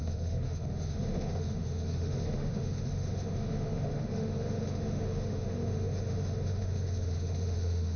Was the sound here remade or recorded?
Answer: remade